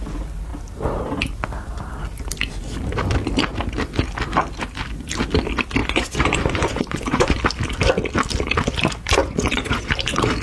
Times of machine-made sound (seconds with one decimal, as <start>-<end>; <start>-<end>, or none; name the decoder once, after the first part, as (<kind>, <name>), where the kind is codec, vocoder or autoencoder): 5.8-7.4 (vocoder, Vocos); 9.2-9.9